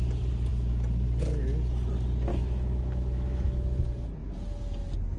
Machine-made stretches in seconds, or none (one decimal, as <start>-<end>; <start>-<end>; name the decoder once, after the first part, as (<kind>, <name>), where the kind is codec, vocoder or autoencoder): 2.3-3.8 (autoencoder, DAC-VAE)